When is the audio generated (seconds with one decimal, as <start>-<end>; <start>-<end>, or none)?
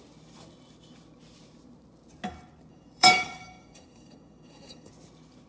2.7-4.9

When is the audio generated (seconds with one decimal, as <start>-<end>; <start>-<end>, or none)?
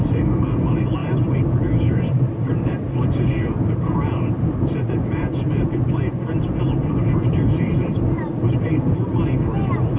none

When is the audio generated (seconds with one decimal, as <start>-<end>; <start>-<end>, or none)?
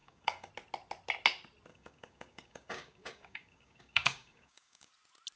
0.0-0.5; 1.7-4.9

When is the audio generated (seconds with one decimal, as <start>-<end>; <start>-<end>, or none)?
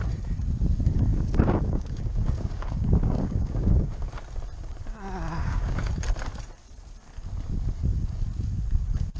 1.1-4.1; 5.4-5.9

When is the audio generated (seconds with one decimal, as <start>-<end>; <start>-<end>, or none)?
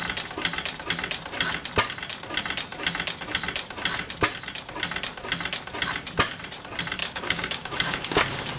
7.0-8.2